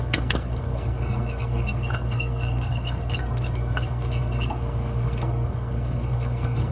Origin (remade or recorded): remade